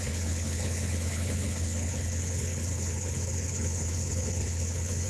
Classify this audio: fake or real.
fake